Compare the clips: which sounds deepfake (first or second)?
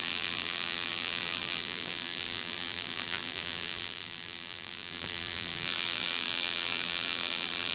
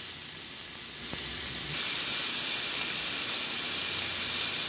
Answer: first